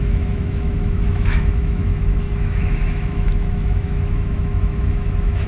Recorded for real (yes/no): no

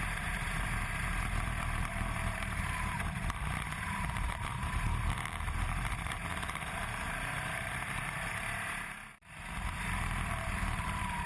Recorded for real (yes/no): no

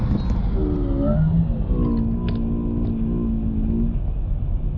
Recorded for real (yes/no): yes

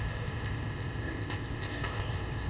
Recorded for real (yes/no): no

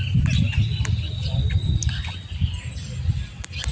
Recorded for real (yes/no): no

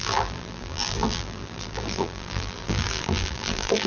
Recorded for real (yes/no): no